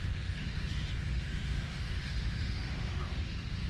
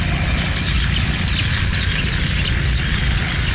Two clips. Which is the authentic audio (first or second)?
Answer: second